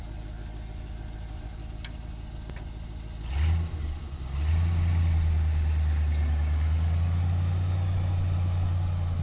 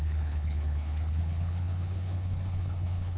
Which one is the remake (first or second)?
second